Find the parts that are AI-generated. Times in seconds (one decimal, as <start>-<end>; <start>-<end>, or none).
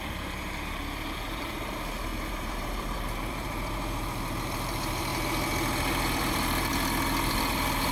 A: 0.0-5.1; 6.3-6.7; 7.3-7.9